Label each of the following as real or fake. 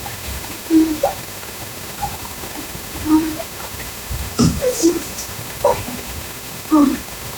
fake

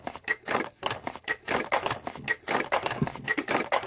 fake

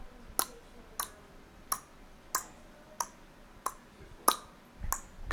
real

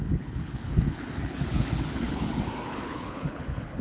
fake